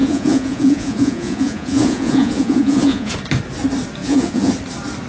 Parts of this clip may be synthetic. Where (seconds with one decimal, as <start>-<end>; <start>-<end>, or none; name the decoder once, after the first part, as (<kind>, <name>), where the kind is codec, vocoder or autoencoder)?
0.0-3.1 (vocoder, Vocos); 4.0-4.5